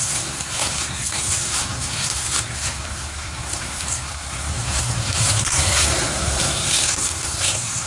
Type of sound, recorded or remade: remade